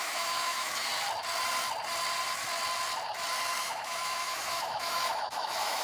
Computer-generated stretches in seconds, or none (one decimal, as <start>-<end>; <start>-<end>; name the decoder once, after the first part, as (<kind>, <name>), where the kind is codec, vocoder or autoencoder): 0.0-0.9 (autoencoder, DAC-VAE); 3.6-5.8